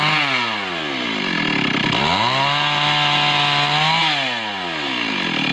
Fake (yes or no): no